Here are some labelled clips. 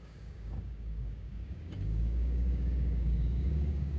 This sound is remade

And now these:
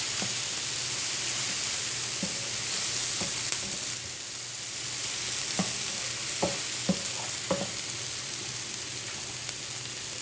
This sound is recorded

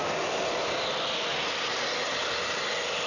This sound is recorded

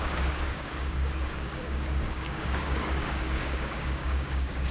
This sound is remade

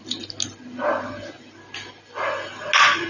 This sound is recorded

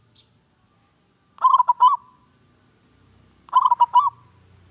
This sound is recorded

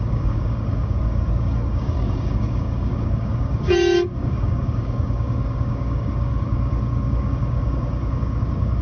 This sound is remade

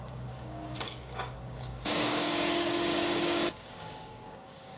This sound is remade